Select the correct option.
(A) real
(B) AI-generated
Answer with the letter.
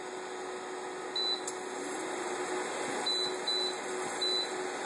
A